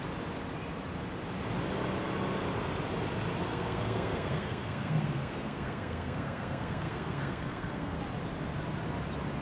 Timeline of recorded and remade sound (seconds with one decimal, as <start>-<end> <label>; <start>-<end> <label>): 0.0-3.5 recorded; 3.5-8.0 remade; 8.0-9.4 recorded

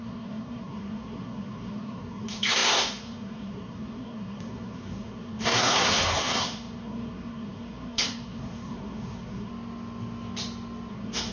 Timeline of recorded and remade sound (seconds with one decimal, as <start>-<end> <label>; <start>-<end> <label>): 0.0-9.5 remade; 9.5-10.9 recorded; 10.9-11.3 remade

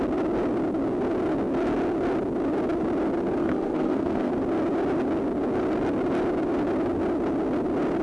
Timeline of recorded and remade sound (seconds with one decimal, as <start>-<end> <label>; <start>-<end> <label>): 0.0-3.4 recorded; 3.4-4.3 remade; 4.3-8.0 recorded